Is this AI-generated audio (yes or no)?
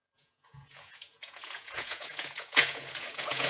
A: yes